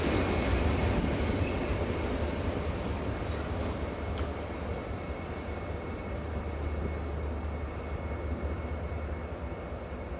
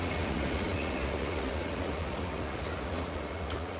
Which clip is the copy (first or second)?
second